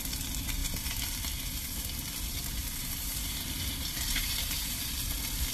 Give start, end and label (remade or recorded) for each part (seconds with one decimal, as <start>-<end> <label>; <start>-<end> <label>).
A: 0.0-2.8 recorded; 2.8-4.9 remade; 4.9-5.5 recorded